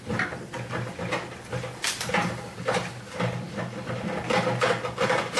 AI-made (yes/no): no